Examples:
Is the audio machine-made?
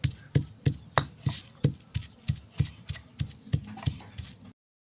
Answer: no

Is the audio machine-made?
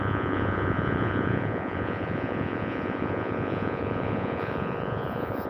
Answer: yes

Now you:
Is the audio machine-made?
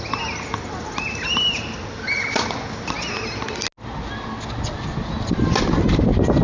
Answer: no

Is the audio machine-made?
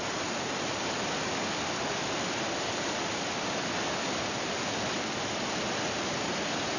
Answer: no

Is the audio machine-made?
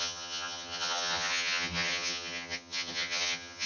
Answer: yes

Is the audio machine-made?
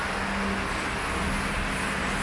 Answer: no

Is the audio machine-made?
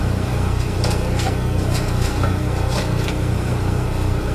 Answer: yes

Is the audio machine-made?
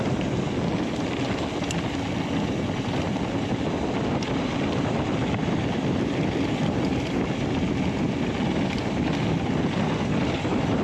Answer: no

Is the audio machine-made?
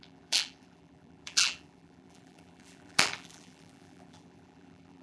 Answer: yes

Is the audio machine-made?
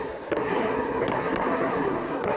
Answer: yes